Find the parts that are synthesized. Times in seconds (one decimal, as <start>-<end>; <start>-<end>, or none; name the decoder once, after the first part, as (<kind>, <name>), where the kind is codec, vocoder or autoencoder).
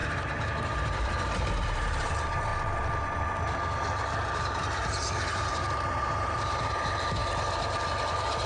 0.0-2.5 (vocoder, BigVGAN v2); 4.4-7.2